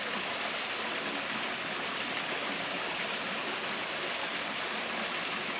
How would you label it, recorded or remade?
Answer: recorded